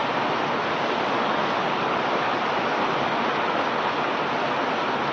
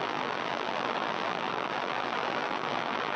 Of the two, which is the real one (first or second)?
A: first